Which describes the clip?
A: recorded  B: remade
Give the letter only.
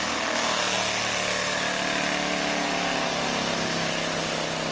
A